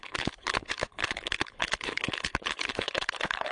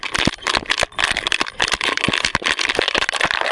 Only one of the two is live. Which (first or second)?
second